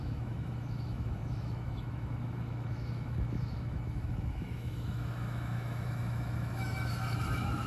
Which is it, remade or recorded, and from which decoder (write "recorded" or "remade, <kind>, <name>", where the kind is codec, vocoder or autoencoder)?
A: remade, autoencoder, DAC-VAE